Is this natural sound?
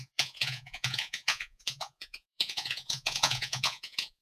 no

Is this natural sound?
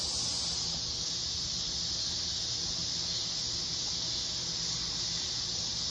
yes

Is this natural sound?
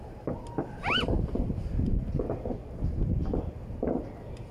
yes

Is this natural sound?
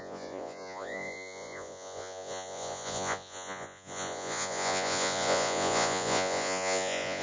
no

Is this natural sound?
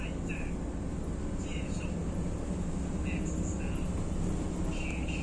yes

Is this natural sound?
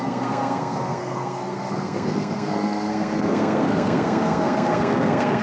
no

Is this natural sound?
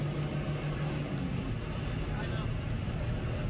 yes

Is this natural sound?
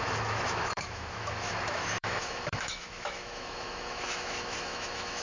no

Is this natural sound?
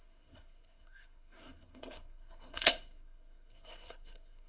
no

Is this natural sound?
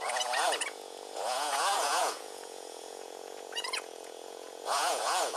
no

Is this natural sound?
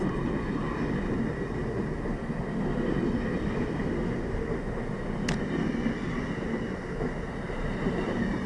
yes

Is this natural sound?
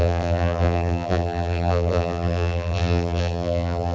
no